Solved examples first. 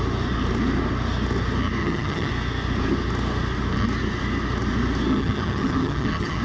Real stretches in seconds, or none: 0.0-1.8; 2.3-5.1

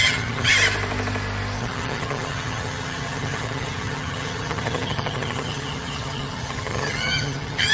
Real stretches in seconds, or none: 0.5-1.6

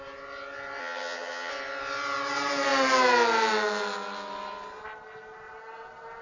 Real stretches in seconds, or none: 0.0-0.8; 1.5-6.2

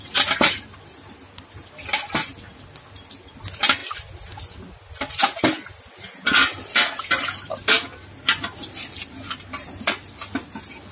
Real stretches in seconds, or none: 0.0-10.9

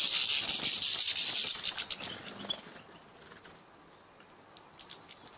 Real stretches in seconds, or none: 0.0-5.4

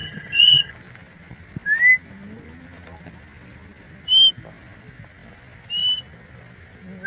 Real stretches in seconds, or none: 0.7-7.1

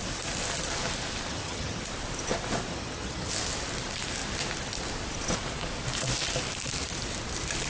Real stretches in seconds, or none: 0.0-1.3; 1.8-2.7; 3.3-7.7

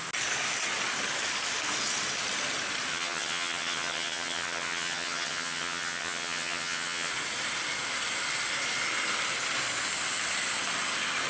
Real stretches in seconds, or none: 0.0-2.9; 7.1-11.3